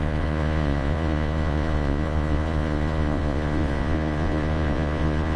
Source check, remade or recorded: remade